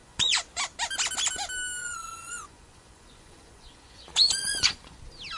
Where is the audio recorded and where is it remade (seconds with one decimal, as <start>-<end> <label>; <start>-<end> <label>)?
0.0-0.6 remade; 0.6-1.8 recorded; 1.8-5.0 remade; 5.0-5.4 recorded